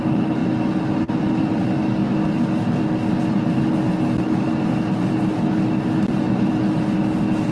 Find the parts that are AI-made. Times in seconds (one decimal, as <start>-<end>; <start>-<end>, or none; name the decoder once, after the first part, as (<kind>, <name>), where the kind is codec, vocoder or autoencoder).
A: none